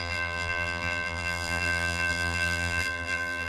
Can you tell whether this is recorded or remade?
remade